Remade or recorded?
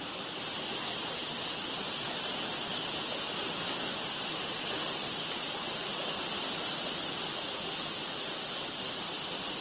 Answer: recorded